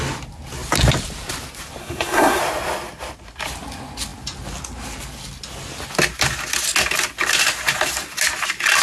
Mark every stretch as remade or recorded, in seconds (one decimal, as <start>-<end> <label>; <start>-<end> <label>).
0.0-1.8 recorded; 1.8-2.4 remade; 2.4-8.8 recorded